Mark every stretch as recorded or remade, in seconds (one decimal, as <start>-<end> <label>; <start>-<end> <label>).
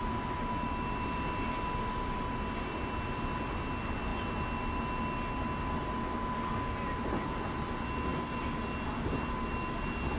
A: 0.0-10.2 recorded